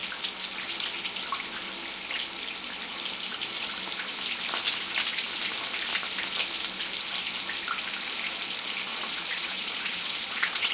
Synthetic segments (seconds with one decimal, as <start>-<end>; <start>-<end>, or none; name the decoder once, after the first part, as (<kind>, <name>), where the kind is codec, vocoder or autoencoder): 8.9-10.7 (vocoder, Vocos)